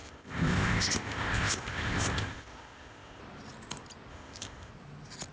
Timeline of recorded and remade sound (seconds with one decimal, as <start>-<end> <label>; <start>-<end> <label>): 0.0-3.2 remade; 3.2-4.1 recorded; 4.1-4.7 remade; 4.7-5.3 recorded